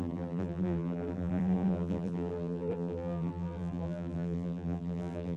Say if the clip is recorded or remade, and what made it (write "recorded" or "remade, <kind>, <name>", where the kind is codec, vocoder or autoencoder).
remade, vocoder, BigVGAN v2